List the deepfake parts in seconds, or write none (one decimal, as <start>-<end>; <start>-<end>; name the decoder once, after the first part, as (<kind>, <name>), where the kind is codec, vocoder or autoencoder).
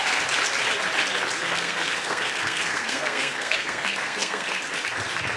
1.4-4.6 (codec, SNAC)